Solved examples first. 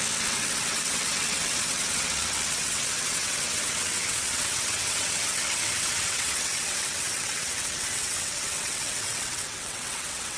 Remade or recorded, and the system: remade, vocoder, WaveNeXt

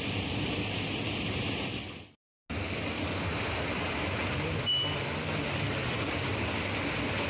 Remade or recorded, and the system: recorded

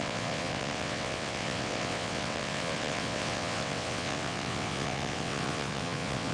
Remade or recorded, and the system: remade, vocoder, WaveNeXt